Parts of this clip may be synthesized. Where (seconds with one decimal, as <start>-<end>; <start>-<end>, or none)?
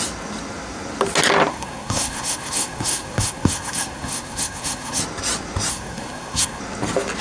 1.5-5.0; 5.7-6.6